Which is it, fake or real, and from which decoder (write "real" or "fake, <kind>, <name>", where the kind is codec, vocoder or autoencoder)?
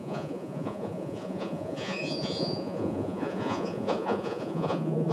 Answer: fake, vocoder, Vocos